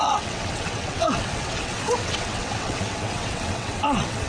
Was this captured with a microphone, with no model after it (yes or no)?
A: no